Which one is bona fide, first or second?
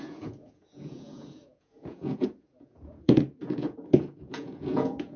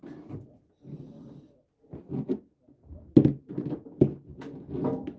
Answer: second